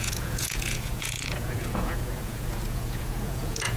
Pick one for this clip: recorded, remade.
remade